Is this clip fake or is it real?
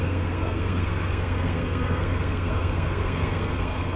fake